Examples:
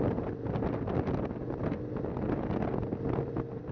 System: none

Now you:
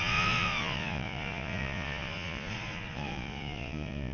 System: vocoder, Vocos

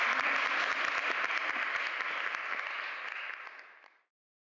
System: none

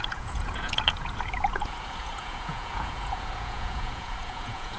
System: vocoder, Vocos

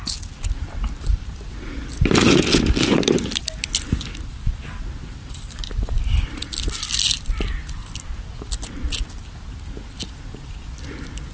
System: none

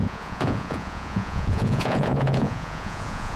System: vocoder, Vocos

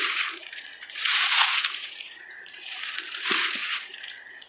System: vocoder, Vocos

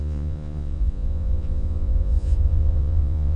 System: vocoder, Vocos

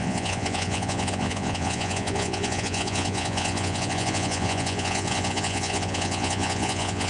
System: vocoder, Vocos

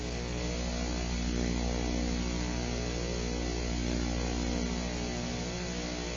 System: none